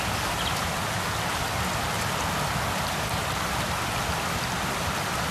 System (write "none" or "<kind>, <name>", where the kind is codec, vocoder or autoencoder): none